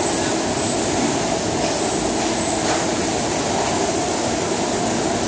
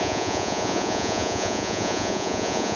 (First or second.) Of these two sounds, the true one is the first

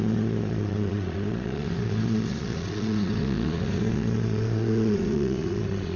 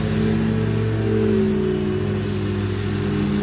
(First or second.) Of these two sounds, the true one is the second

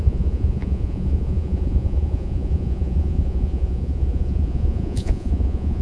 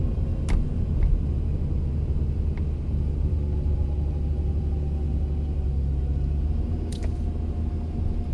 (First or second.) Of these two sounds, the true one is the second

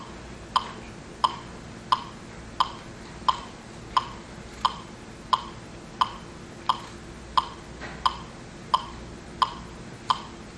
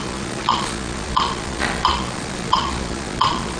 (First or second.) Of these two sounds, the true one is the first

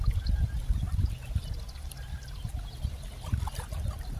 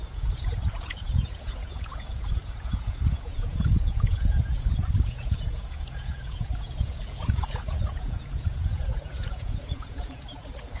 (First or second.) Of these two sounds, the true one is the first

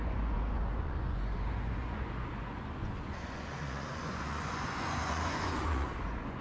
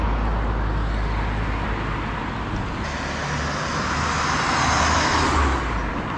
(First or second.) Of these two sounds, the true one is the second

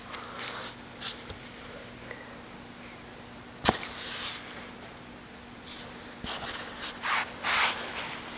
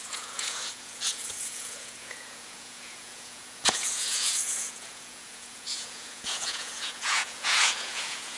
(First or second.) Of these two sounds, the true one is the first